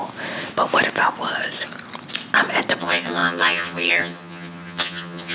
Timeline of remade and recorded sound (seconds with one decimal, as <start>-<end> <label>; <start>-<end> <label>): 0.0-2.8 recorded; 2.8-5.3 remade